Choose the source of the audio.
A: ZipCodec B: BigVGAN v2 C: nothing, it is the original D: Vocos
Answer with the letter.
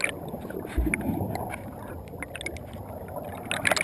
C